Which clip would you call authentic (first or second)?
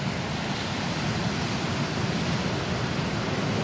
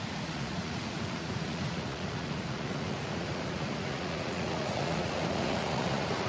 first